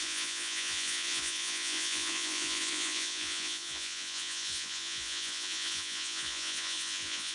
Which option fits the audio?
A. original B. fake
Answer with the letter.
B